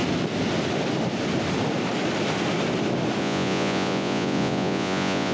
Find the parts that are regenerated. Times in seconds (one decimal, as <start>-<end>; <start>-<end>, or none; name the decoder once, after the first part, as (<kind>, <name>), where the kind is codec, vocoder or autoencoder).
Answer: 3.2-5.3 (vocoder, Vocos)